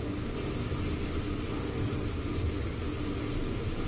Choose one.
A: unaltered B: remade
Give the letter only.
A